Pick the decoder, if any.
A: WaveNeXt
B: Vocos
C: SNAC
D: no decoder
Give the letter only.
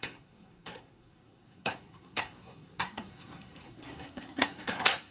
C